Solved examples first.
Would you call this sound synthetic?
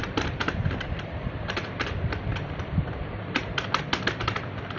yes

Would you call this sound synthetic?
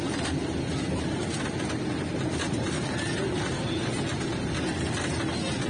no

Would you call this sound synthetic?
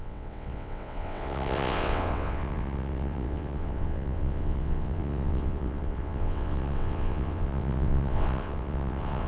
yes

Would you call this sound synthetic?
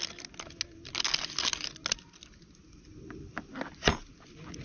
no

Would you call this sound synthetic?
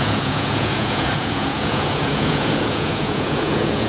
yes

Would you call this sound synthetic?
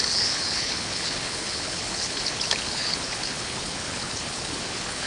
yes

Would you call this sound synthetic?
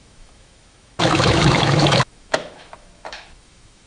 yes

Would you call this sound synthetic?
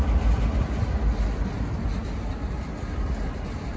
no